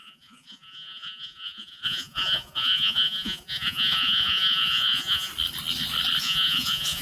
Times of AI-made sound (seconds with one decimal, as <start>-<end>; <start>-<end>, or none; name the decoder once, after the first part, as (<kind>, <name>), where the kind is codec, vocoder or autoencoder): 0.0-5.3 (vocoder, Vocos); 6.2-7.0